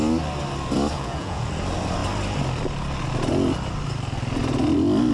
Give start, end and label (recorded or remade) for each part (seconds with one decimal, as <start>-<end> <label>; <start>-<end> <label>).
0.0-0.9 recorded; 0.9-1.5 remade; 1.5-5.1 recorded